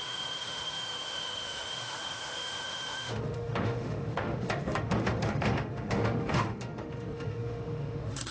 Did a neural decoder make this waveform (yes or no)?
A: yes